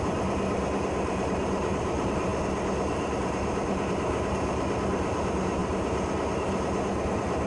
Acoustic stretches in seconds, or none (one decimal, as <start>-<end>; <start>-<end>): 2.3-3.2